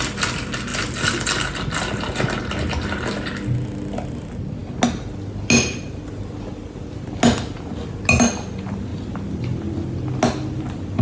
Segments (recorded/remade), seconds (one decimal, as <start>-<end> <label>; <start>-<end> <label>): 0.0-11.0 recorded